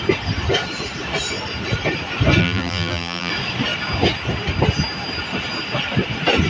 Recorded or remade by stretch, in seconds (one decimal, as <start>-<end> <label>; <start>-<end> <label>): 0.0-2.4 recorded; 2.4-3.3 remade; 3.3-6.5 recorded